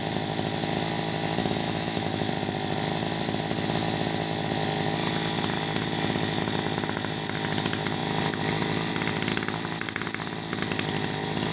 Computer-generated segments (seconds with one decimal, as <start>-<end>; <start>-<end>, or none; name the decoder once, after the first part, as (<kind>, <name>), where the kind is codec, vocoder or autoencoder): 1.4-2.3 (autoencoder, DAC-VAE)

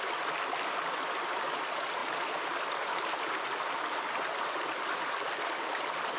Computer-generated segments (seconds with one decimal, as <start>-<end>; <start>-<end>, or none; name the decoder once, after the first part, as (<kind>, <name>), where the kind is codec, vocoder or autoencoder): none

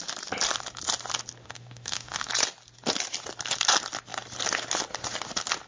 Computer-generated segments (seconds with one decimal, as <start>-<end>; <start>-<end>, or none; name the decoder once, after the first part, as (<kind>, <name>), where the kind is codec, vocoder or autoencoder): 1.4-2.3 (autoencoder, DAC-VAE)

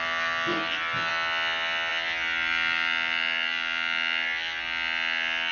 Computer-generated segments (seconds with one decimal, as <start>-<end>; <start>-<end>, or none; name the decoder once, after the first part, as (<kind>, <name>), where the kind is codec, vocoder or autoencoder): none

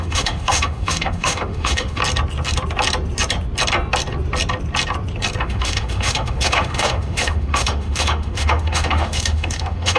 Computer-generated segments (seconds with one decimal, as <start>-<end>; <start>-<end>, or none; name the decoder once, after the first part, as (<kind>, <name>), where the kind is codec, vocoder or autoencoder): 0.0-2.0 (autoencoder, DAC-VAE); 5.4-10.0

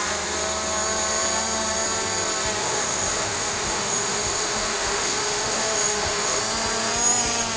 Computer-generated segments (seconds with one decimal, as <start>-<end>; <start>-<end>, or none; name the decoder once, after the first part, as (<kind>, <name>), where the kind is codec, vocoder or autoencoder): 2.6-6.4 (autoencoder, DAC-VAE)